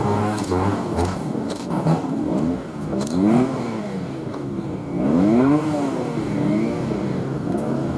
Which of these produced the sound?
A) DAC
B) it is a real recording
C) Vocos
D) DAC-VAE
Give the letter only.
A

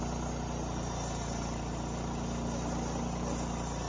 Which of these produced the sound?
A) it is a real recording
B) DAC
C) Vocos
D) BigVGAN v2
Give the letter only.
A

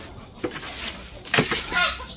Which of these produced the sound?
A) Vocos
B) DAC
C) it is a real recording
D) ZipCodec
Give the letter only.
C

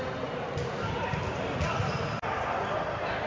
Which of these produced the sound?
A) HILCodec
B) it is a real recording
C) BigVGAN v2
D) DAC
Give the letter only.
B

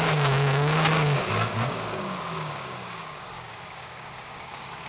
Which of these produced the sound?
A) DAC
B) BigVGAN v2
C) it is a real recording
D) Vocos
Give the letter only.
A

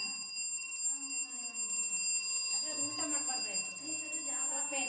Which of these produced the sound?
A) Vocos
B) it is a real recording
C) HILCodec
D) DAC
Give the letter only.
B